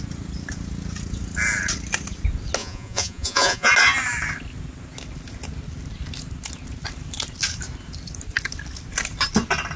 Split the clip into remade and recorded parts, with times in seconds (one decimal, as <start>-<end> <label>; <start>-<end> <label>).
0.0-2.6 recorded; 2.6-3.7 remade; 3.7-9.8 recorded